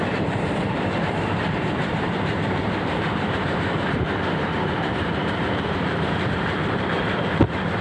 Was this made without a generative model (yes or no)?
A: no